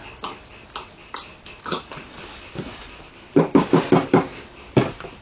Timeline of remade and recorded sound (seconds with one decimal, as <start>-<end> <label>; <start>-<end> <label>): 0.0-3.1 recorded; 3.1-3.7 remade; 3.7-5.2 recorded